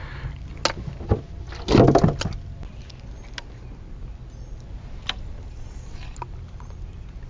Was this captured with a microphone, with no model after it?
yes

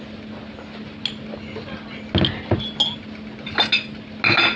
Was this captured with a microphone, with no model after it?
yes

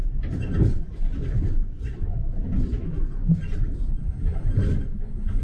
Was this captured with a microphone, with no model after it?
yes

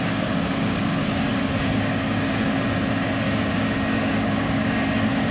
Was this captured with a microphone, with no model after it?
no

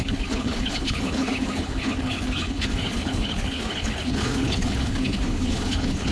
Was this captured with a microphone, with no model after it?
no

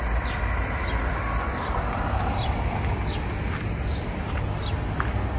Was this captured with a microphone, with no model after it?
yes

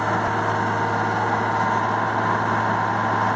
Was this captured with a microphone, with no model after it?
yes